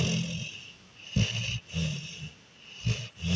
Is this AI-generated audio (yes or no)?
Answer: no